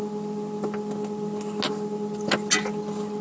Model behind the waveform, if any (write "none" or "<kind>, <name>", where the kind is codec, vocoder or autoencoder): none